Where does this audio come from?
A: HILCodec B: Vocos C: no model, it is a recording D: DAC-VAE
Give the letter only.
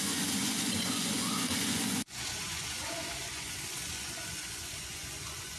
B